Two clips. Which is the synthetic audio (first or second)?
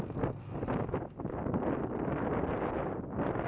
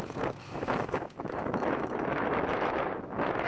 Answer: second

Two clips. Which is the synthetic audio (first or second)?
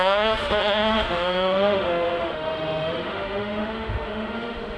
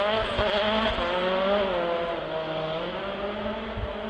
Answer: first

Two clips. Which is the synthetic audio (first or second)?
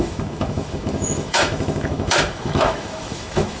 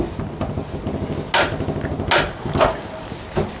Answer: first